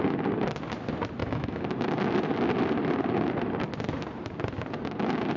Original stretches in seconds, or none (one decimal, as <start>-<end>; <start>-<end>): 0.0-1.2; 1.7-5.4